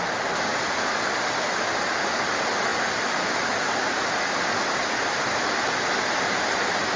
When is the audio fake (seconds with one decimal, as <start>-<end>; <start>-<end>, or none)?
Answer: none